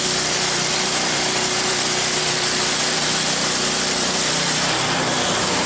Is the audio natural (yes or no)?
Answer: no